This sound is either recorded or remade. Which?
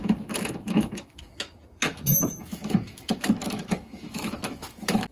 remade